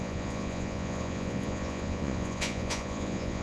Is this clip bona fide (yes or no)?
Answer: no